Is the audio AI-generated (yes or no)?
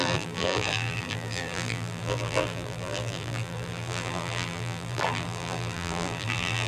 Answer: yes